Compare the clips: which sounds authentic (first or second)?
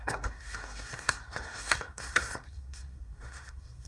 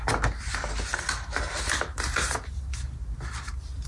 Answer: second